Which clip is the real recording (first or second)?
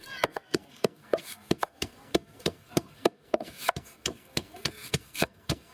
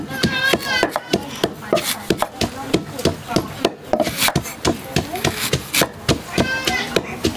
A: second